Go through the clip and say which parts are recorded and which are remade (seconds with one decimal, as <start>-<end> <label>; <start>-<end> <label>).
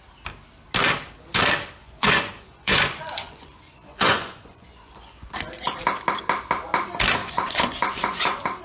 0.0-1.8 recorded; 1.8-5.3 remade; 5.3-7.2 recorded; 7.2-8.6 remade